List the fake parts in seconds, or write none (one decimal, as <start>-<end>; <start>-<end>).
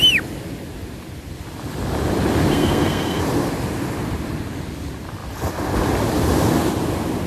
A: 2.5-3.2